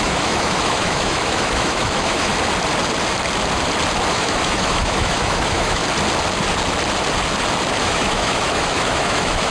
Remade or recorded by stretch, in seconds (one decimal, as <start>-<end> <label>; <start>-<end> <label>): 0.0-2.3 remade; 2.3-4.1 recorded; 4.1-5.8 remade; 5.8-7.8 recorded; 7.8-9.5 remade